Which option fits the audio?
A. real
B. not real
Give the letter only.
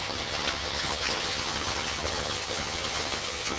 B